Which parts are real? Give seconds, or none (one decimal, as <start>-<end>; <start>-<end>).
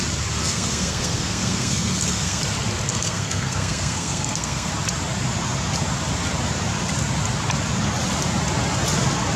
0.0-0.4; 2.4-2.9; 4.7-9.4